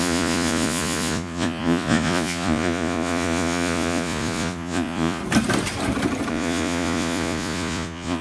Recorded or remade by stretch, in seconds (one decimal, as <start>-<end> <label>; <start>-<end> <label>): 0.0-5.2 remade; 5.2-6.3 recorded; 6.3-8.2 remade